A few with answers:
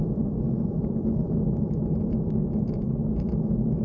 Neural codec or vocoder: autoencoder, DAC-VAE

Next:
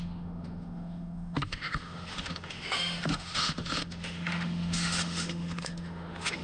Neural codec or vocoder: autoencoder, DAC-VAE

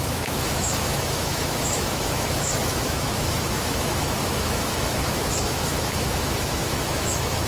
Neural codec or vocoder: autoencoder, DAC-VAE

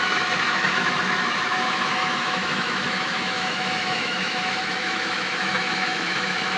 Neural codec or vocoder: autoencoder, DAC-VAE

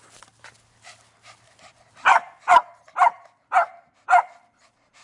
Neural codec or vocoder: none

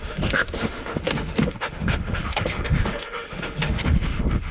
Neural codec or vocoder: autoencoder, DAC-VAE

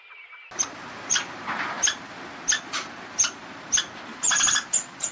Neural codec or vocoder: none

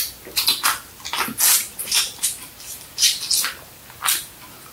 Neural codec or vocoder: none